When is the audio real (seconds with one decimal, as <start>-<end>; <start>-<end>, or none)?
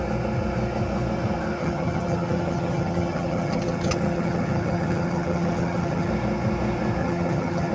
0.0-1.6; 6.1-7.0